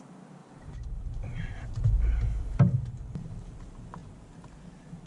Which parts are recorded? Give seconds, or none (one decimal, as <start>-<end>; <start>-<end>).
0.0-0.4; 3.5-5.1